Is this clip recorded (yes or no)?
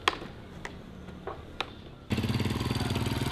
yes